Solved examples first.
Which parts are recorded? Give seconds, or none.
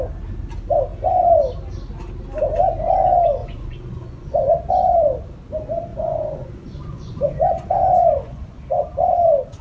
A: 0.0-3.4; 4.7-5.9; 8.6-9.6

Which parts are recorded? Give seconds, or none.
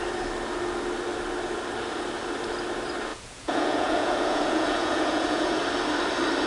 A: 0.0-3.1; 5.6-6.5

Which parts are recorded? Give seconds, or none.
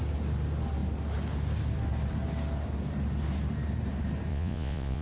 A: 0.0-4.3